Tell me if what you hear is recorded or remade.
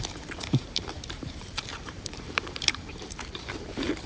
remade